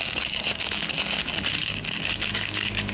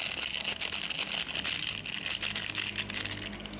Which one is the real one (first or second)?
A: second